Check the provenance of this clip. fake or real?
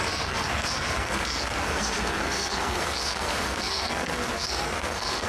fake